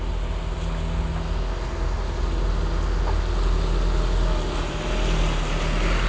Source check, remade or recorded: recorded